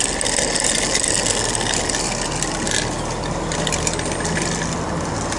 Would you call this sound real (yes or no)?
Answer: yes